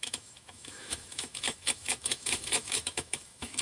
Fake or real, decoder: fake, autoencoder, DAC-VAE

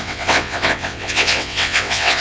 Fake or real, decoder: fake, vocoder, WaveNeXt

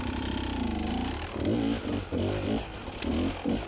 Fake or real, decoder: real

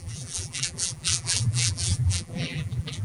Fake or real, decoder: fake, vocoder, BigVGAN v2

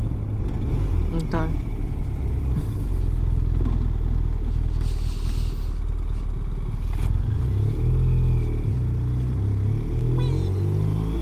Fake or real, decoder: real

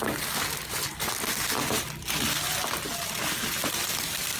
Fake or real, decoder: real